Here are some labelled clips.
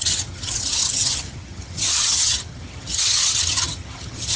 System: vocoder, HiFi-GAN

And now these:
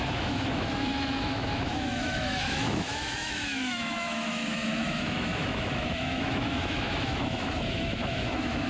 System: autoencoder, DAC-VAE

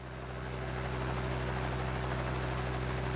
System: none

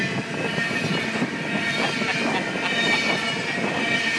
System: none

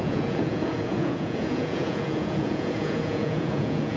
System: vocoder, Vocos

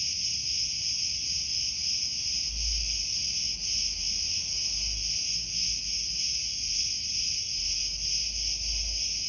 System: none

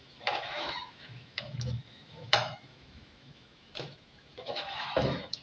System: autoencoder, DAC-VAE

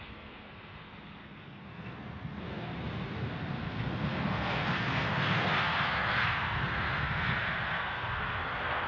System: codec, SNAC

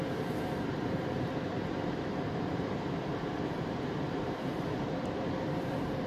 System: vocoder, BigVGAN v2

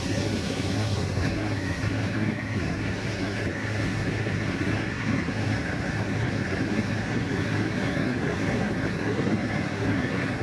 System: codec, SNAC